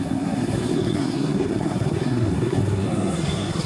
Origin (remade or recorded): remade